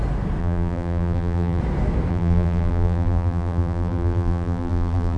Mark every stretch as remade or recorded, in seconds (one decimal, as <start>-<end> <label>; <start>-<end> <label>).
0.0-0.4 recorded; 0.4-1.6 remade; 1.6-2.1 recorded; 2.1-5.2 remade